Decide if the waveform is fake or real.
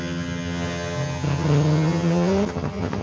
fake